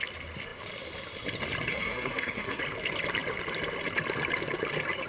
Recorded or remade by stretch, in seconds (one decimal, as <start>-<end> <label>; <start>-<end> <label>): 0.0-1.7 recorded; 1.7-2.6 remade; 2.6-5.1 recorded